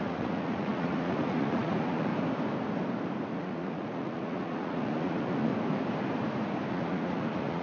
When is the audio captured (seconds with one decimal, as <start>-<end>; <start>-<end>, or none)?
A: 2.1-3.3; 5.5-6.7